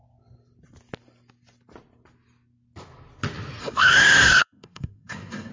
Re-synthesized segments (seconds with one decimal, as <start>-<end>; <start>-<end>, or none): 3.6-5.5